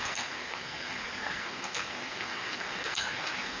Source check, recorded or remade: remade